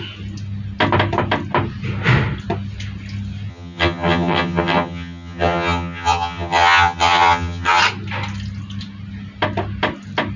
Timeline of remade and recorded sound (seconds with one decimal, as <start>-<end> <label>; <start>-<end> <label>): 0.0-3.5 recorded; 3.5-7.8 remade; 7.8-10.4 recorded